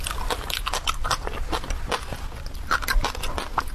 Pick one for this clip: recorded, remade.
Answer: recorded